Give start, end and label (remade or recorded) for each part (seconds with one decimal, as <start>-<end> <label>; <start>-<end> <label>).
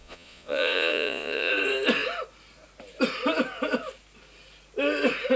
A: 0.0-1.5 remade; 1.5-5.4 recorded